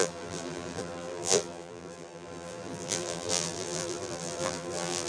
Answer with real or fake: fake